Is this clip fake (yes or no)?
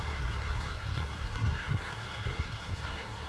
yes